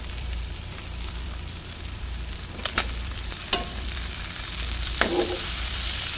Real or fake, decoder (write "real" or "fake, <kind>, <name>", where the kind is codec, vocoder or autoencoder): fake, vocoder, BigVGAN v2